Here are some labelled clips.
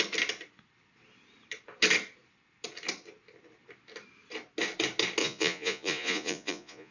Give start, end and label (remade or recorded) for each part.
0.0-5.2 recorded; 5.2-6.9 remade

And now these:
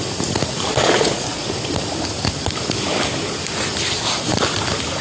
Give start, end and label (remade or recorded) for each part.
0.0-0.7 recorded; 0.7-1.5 remade; 1.5-5.0 recorded